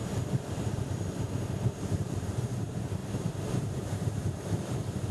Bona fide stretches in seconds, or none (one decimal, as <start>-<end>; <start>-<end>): 0.0-1.8; 3.0-3.7